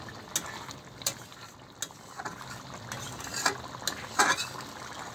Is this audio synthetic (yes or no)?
no